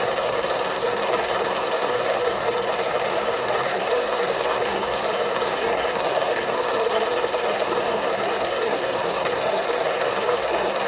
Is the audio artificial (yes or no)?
yes